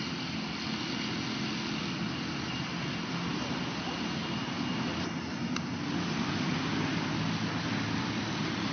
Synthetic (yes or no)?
no